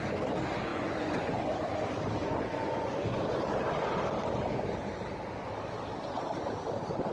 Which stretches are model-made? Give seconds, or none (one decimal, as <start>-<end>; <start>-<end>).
0.7-1.4; 2.2-3.2